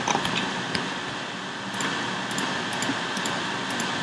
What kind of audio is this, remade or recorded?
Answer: recorded